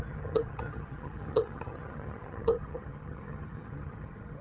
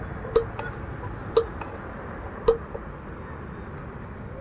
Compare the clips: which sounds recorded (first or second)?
second